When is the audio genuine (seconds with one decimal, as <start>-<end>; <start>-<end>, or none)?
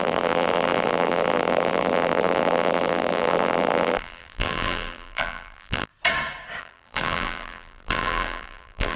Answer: 5.9-6.6